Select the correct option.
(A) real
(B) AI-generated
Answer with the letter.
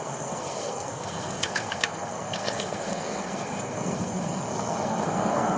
B